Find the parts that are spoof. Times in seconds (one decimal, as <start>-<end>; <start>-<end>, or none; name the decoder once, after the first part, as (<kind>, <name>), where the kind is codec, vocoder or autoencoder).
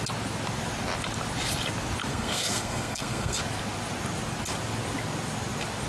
2.1-3.4 (codec, SNAC)